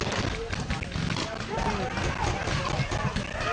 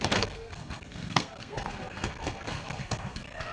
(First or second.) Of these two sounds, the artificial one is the second